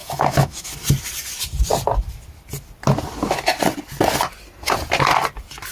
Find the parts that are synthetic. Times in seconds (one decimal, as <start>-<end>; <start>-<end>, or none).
0.0-0.7